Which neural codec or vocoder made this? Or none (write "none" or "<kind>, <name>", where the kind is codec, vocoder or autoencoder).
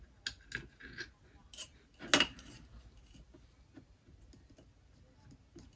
none